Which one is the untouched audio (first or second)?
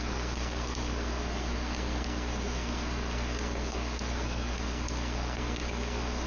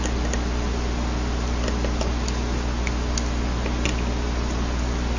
second